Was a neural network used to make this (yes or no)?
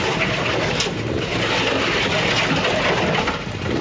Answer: no